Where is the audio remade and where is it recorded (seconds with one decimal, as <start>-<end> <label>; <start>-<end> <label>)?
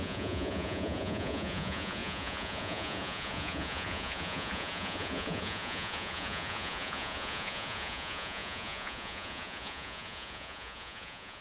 0.0-11.4 remade